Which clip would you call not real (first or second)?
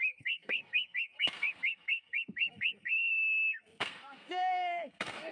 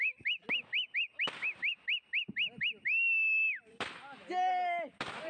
first